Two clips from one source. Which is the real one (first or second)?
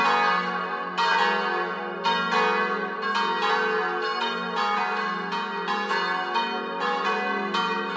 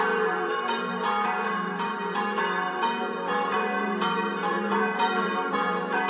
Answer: first